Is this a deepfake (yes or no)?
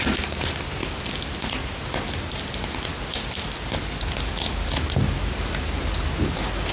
no